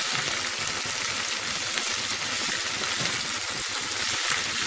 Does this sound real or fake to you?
real